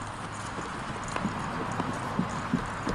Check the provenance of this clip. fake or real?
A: real